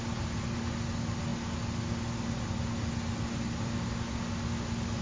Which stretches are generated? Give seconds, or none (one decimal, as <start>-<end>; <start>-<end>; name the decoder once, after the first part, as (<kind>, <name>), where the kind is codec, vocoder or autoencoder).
none